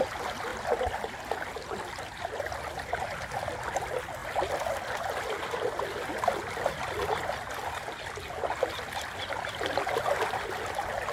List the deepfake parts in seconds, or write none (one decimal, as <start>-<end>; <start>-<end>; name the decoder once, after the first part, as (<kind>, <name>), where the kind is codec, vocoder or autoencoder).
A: 0.5-2.5 (vocoder, BigVGAN v2); 4.2-8.6